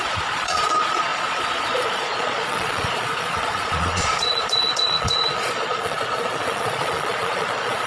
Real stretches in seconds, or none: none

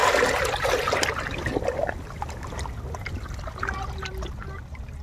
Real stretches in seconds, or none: 0.0-5.0

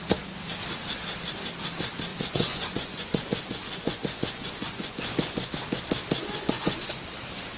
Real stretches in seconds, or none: 0.0-2.1; 5.5-6.2; 7.0-7.6

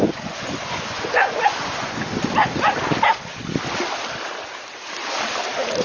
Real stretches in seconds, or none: 2.1-5.8

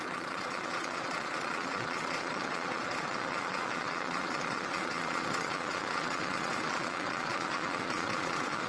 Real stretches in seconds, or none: none